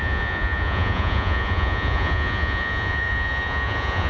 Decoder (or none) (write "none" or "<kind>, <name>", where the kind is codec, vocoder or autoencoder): vocoder, Vocos